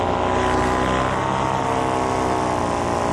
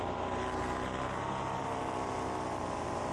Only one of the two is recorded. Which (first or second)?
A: first